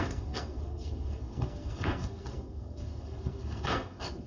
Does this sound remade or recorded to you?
remade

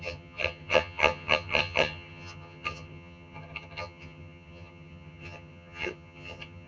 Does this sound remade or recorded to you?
remade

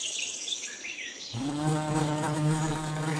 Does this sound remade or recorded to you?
remade